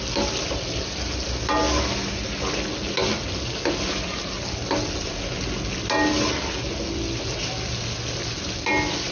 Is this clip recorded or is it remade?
recorded